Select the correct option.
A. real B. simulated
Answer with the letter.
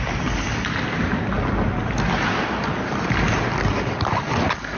A